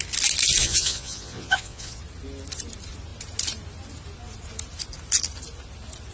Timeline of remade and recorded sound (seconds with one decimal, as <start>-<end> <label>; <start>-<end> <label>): 0.0-0.6 recorded; 0.6-2.0 remade; 2.0-6.1 recorded